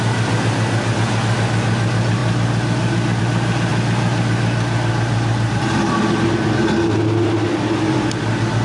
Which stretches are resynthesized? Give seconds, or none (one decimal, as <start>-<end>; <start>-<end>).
none